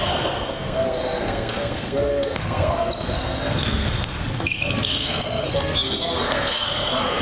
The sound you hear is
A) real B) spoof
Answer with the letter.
B